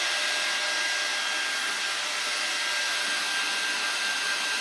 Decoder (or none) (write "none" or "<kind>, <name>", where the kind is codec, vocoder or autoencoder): none